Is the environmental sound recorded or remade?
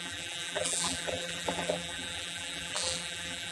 remade